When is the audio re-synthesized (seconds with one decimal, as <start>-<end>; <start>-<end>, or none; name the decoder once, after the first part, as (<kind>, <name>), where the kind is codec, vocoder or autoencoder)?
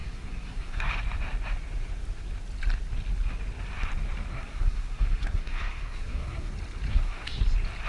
0.0-0.9 (codec, SNAC); 4.3-6.5; 6.9-7.4